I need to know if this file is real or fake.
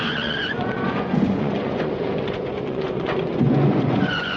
fake